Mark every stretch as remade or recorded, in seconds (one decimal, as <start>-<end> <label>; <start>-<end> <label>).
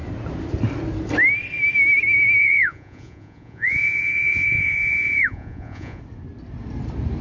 0.0-2.4 recorded; 2.4-6.0 remade; 6.0-7.2 recorded